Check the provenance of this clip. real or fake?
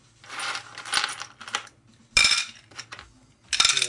real